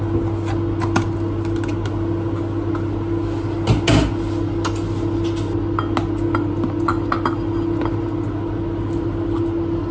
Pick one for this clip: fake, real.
real